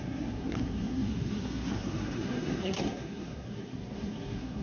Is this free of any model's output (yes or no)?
no